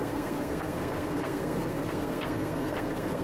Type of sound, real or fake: fake